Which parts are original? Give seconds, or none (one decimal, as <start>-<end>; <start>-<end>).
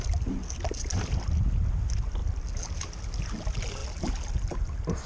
0.0-5.1